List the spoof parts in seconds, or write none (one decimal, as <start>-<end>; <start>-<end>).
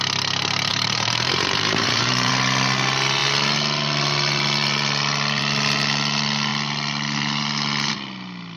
0.7-2.3